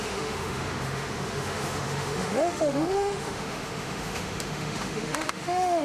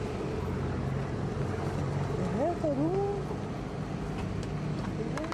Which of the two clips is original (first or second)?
second